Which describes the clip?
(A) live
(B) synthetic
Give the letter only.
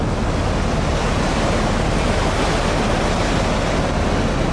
A